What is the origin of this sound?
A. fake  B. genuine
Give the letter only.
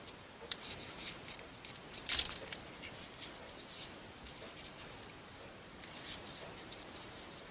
A